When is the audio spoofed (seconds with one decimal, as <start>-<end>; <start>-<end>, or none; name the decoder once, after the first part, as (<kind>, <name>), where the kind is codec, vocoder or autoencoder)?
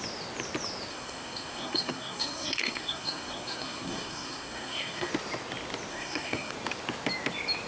0.9-5.1 (codec, SNAC); 5.9-6.5